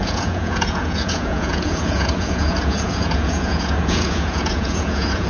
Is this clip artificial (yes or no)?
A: yes